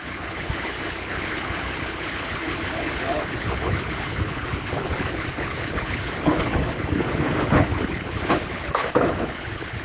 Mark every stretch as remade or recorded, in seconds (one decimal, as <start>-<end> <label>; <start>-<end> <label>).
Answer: 0.0-9.8 remade